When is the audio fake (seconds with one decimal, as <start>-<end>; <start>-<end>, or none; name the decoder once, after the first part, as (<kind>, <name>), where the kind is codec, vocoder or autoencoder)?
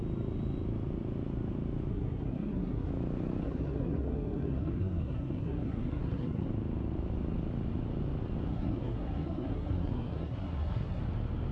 1.9-2.9 (codec, SNAC); 3.4-6.5; 8.5-11.0